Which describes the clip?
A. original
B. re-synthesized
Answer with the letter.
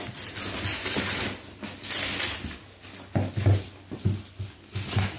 A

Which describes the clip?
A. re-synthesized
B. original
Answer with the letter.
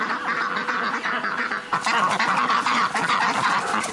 B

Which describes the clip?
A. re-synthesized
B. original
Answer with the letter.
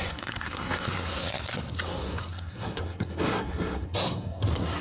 A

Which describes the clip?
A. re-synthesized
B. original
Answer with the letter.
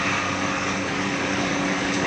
A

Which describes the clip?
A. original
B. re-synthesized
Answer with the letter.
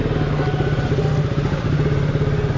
A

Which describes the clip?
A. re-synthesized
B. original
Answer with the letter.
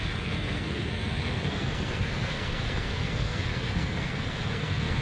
A